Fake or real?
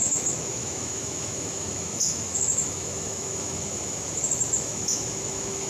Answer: fake